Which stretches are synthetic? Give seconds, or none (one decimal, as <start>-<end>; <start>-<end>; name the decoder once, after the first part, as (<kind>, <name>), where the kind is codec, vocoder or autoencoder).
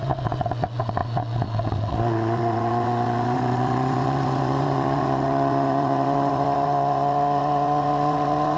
0.0-8.6 (vocoder, WaveNeXt)